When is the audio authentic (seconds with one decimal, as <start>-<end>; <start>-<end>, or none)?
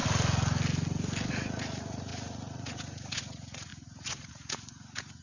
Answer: 0.0-1.3